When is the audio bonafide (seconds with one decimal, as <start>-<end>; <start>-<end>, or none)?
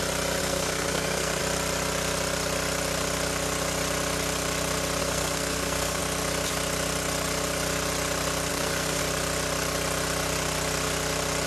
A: 0.0-0.4; 1.4-5.0; 6.0-8.5; 9.0-11.5